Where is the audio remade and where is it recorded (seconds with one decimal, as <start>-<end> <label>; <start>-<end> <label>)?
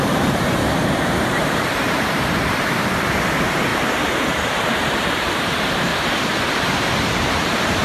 0.0-3.7 remade; 3.7-4.3 recorded; 4.3-5.9 remade; 5.9-6.4 recorded; 6.4-7.8 remade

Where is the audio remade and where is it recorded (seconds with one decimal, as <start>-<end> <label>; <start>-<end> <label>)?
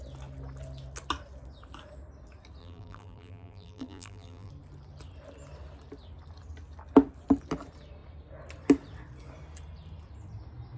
0.0-2.6 recorded; 2.6-4.5 remade; 4.5-10.8 recorded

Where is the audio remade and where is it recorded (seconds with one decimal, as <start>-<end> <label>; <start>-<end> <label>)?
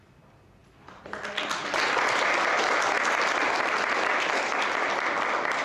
0.0-5.6 recorded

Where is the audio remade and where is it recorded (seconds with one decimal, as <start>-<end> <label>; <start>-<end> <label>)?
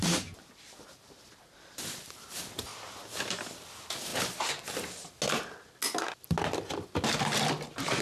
0.0-2.7 remade; 2.7-3.5 recorded; 3.5-4.1 remade; 4.1-7.5 recorded; 7.5-8.0 remade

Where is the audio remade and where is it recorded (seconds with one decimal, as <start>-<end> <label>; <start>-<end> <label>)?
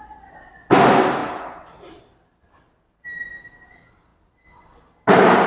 0.0-1.2 recorded; 1.2-2.0 remade; 2.0-5.5 recorded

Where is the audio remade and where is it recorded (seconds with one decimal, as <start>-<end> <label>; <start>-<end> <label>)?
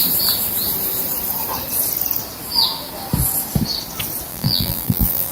0.0-4.3 recorded; 4.3-5.3 remade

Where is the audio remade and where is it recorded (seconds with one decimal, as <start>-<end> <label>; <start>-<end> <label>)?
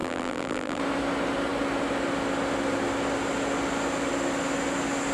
0.0-0.8 remade; 0.8-5.1 recorded